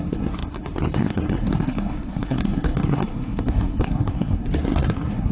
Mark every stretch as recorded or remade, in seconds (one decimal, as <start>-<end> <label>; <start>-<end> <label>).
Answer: 0.0-5.3 remade